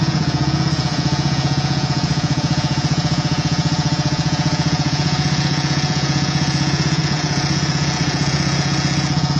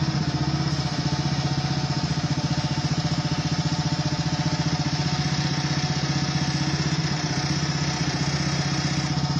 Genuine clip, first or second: second